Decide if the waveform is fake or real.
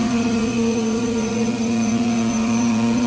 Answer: fake